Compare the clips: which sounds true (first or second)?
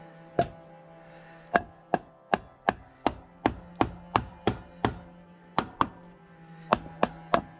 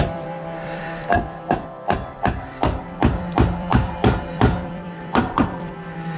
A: first